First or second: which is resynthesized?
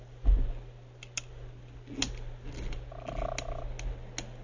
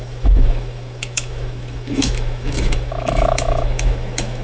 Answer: second